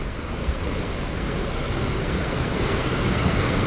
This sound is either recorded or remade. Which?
remade